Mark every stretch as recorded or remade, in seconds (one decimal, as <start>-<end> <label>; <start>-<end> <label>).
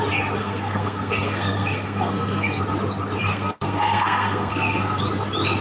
0.0-0.4 recorded; 0.4-2.6 remade; 2.6-3.2 recorded; 3.2-5.0 remade; 5.0-5.6 recorded